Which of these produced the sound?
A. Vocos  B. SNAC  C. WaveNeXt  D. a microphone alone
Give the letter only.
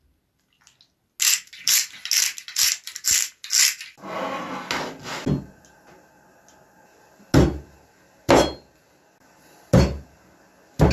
D